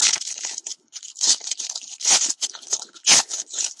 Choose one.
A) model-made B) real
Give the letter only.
A